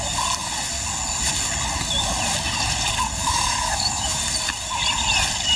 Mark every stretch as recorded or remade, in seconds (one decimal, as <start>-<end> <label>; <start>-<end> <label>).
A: 0.0-3.2 recorded; 3.2-4.2 remade; 4.2-5.6 recorded